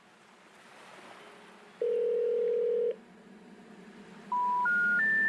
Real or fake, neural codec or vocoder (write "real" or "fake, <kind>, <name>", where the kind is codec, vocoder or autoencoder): real